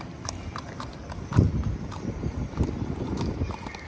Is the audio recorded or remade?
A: recorded